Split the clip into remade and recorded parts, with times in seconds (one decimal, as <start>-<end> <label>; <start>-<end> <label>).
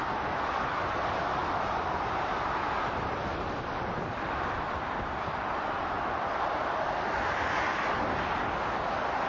0.0-9.3 remade